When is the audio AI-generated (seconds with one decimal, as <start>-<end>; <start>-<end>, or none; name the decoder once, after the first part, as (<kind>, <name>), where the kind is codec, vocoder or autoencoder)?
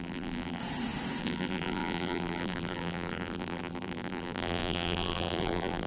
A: 0.0-0.6 (vocoder, BigVGAN v2); 1.2-5.9